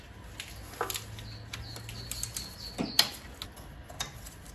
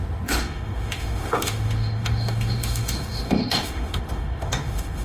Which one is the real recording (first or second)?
first